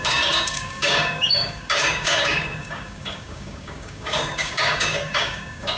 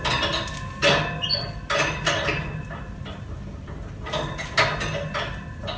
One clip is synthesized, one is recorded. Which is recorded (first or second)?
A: second